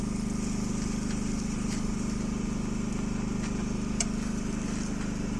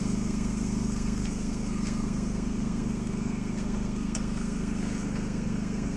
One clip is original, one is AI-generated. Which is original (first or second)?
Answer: first